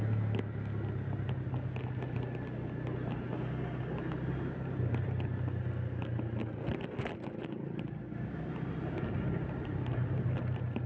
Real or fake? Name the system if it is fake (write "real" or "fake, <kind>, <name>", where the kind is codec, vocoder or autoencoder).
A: real